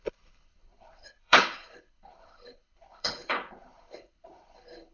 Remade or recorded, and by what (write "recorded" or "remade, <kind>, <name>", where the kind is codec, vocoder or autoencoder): remade, codec, HILCodec